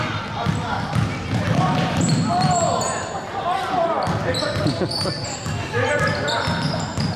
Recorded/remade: recorded